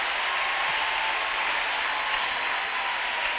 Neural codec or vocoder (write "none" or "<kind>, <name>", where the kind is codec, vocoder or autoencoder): none